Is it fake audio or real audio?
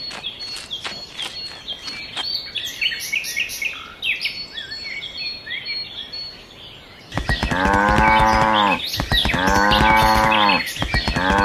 real